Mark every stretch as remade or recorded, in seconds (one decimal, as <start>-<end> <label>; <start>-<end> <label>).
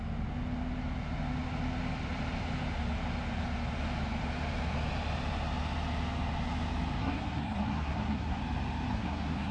0.0-7.0 recorded; 7.0-8.4 remade; 8.4-8.9 recorded; 8.9-9.5 remade